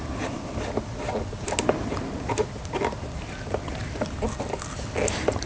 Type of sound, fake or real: real